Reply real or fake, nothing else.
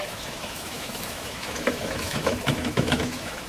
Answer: fake